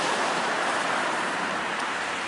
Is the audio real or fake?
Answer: fake